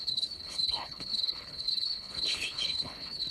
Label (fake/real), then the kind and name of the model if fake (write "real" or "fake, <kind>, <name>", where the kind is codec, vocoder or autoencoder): fake, codec, HILCodec